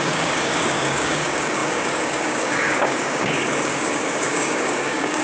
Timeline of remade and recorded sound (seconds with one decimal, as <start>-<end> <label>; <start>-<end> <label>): 0.0-5.2 remade